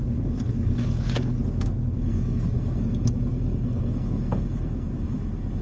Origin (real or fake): fake